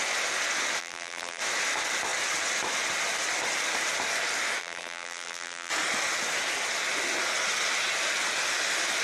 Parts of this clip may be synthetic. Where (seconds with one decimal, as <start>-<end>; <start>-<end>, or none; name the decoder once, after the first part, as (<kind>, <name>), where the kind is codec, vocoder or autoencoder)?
0.8-1.4 (vocoder, BigVGAN v2); 4.6-5.7